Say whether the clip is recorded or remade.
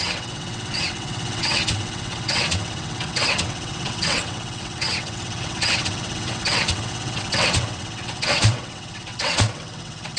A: remade